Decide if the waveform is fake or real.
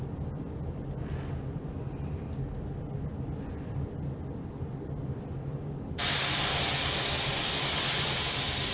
real